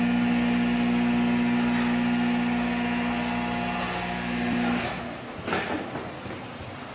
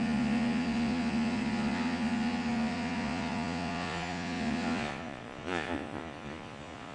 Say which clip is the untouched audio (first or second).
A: first